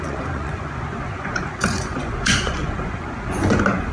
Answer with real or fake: fake